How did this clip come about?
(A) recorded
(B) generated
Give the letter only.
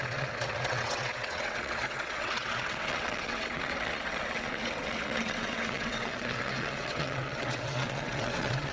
B